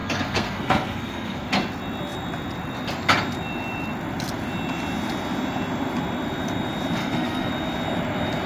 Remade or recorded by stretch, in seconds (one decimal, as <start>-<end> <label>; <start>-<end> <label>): 0.0-1.5 remade; 1.5-7.0 recorded; 7.0-7.5 remade; 7.5-8.5 recorded